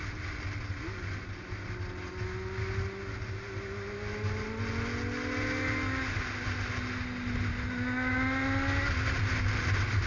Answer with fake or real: real